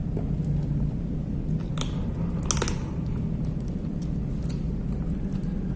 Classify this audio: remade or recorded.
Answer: recorded